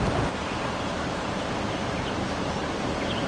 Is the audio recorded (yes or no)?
no